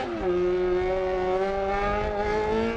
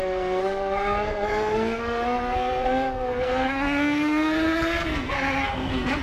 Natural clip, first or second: first